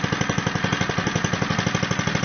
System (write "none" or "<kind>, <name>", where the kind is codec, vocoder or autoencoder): none